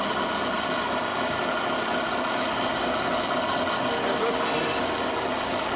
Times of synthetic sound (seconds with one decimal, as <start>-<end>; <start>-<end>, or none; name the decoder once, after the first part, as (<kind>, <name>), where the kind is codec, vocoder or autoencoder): none